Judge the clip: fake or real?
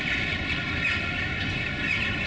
real